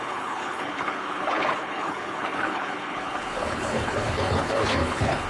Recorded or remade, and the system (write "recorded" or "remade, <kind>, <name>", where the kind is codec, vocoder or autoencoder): remade, codec, HILCodec